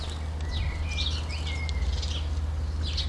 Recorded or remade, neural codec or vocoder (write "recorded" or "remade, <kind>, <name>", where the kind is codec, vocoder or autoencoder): recorded